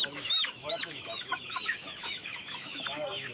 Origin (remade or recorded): remade